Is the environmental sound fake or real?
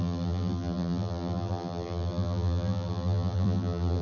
fake